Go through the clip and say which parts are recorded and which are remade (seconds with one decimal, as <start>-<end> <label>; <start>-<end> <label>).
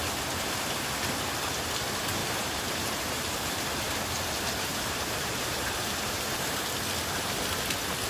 0.0-2.2 recorded; 2.2-3.5 remade; 3.5-4.7 recorded; 4.7-6.6 remade; 6.6-8.1 recorded